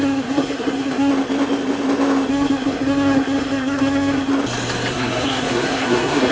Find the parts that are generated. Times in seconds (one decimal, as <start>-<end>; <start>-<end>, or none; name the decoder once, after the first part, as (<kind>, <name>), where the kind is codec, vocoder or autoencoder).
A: 0.0-1.1 (codec, SNAC); 2.3-4.3; 4.9-6.3

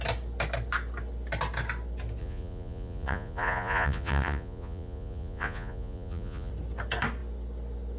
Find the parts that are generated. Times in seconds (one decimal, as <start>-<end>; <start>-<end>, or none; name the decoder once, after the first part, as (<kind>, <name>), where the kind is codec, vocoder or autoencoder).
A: 2.2-6.5 (vocoder, Vocos)